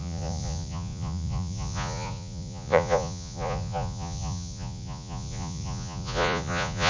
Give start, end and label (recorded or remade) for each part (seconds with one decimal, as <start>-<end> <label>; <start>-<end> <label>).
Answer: 0.0-6.9 remade